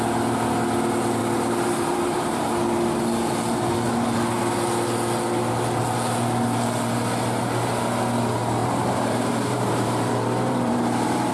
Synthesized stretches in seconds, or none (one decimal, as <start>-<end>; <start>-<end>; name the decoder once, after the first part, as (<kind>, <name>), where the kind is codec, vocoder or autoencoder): 1.2-2.5 (vocoder, BigVGAN v2); 8.6-11.3

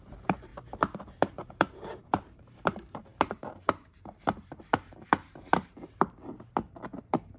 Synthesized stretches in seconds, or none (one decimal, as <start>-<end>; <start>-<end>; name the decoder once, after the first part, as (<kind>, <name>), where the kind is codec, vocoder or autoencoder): 0.0-0.5 (vocoder, BigVGAN v2); 1.0-7.4

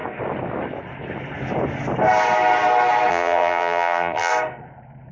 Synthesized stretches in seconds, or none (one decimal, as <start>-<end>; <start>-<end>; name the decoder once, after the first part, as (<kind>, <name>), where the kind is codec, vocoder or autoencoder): 3.1-4.3 (vocoder, BigVGAN v2)

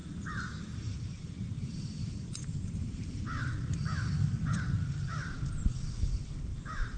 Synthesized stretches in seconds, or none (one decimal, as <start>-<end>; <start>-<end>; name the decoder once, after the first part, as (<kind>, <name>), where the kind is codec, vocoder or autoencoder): 2.4-3.2 (vocoder, BigVGAN v2)

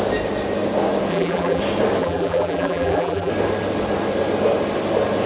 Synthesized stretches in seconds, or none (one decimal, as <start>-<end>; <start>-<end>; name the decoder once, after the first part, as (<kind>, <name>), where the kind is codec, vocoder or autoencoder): 1.1-1.6 (vocoder, BigVGAN v2); 2.0-3.3

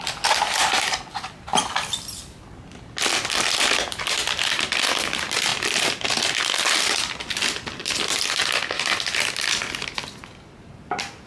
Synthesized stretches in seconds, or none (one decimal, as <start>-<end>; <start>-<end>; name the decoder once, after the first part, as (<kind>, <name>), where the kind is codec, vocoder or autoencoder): none